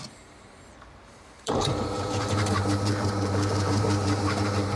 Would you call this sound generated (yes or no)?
yes